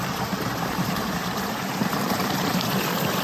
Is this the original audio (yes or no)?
no